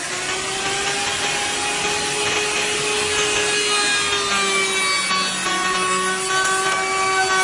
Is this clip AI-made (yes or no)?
no